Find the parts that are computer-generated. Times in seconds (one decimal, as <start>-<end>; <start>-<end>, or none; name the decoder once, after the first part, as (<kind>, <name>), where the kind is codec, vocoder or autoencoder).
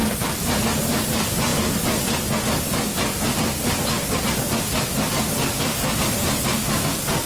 none